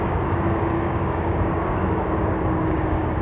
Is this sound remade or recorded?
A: remade